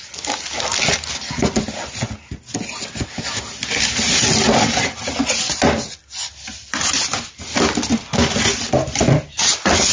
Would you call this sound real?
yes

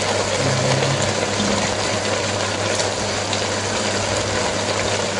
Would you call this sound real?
yes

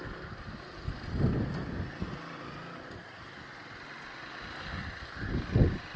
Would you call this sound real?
yes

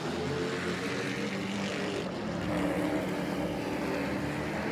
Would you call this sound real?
yes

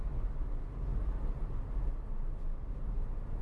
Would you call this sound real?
yes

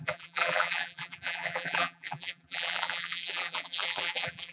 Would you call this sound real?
no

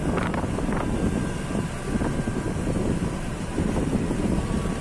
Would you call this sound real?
yes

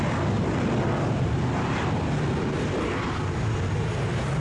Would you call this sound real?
yes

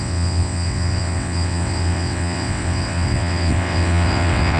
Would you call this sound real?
no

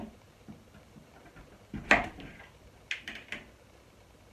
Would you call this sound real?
yes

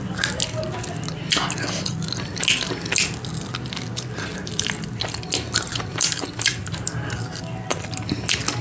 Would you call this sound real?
yes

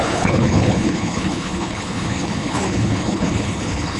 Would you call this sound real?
no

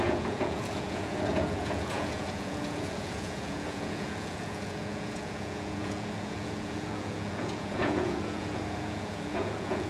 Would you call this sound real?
no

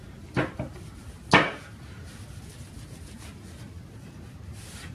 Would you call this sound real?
yes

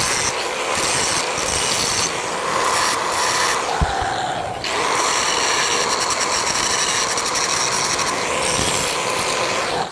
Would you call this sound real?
yes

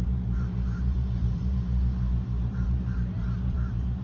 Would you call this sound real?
no